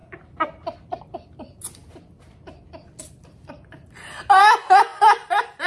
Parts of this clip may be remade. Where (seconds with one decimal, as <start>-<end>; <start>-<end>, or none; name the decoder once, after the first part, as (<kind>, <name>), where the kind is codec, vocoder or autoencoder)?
none